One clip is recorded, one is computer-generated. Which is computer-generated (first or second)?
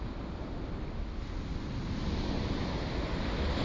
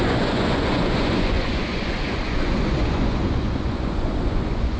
second